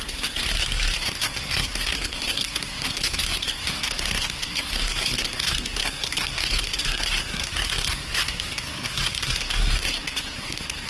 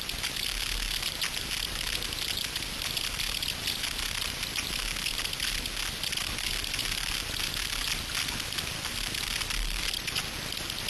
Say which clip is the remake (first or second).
first